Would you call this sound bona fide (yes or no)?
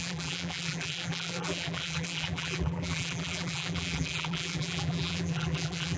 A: no